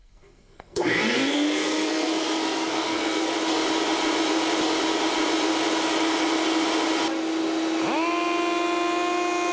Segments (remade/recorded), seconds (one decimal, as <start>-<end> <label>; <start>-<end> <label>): 0.0-3.3 remade; 3.3-9.5 recorded